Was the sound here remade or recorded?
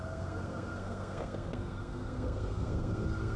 remade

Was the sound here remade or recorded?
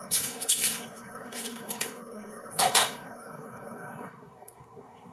remade